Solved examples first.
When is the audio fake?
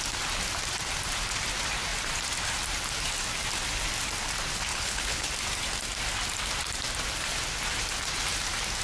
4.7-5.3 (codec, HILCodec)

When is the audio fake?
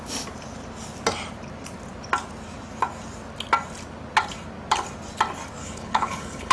5.6-6.5 (codec, HILCodec)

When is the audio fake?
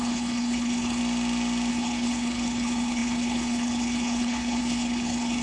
0.0-1.0 (codec, HILCodec); 1.7-5.4